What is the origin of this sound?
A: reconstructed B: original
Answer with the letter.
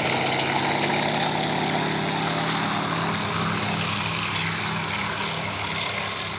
B